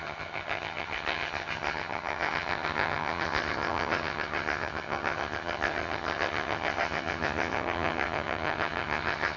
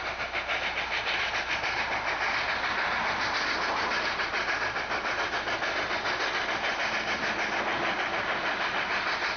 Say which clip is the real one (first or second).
second